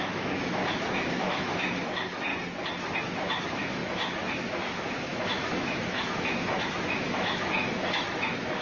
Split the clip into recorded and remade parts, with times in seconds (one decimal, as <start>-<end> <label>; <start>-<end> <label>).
0.0-2.3 remade; 2.3-3.0 recorded; 3.0-8.6 remade